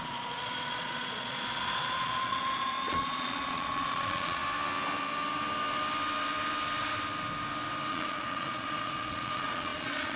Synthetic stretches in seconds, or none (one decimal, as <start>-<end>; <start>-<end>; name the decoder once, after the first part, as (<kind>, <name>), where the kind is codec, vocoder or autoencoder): 0.0-4.4 (vocoder, Vocos); 7.9-10.2